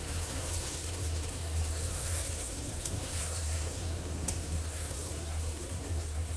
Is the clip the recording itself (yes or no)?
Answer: no